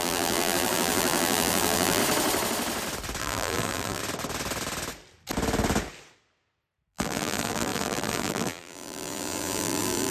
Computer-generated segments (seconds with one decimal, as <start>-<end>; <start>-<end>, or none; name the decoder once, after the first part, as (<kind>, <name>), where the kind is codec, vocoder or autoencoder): 0.0-2.0 (vocoder, BigVGAN v2); 3.2-4.0; 6.9-10.1